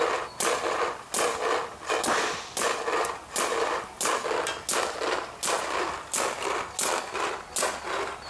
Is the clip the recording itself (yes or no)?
yes